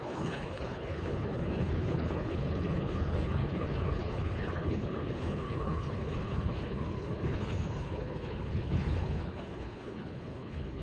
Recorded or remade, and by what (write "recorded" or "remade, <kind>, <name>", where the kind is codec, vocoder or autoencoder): remade, codec, HILCodec